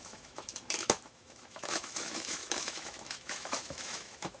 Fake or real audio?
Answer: fake